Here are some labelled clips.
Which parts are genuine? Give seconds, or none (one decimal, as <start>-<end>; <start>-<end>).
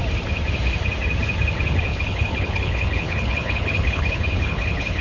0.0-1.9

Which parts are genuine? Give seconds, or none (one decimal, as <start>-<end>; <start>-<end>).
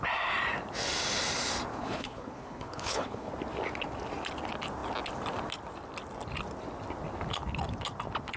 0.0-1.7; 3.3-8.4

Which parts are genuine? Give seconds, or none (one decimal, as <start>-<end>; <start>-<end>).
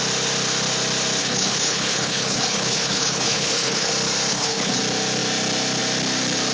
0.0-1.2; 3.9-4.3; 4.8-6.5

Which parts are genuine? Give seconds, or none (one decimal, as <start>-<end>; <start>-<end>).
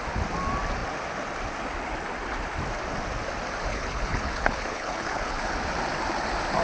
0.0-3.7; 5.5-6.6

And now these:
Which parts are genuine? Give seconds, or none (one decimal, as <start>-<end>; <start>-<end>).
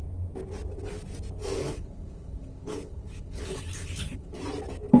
0.0-1.6; 4.4-5.0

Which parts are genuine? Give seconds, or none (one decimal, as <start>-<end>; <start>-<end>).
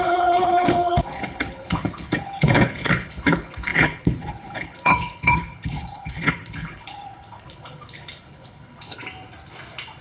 9.0-10.0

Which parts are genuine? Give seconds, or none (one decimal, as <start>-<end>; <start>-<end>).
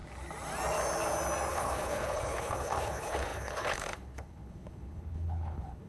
0.0-1.5